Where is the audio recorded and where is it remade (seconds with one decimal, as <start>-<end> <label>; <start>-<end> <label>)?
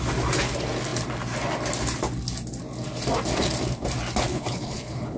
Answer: 0.0-4.3 recorded; 4.3-5.2 remade